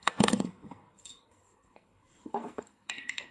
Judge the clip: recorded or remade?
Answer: remade